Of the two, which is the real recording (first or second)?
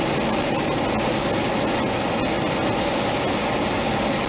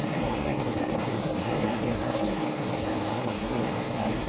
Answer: first